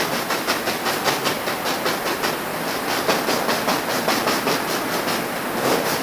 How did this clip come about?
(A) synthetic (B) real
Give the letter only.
B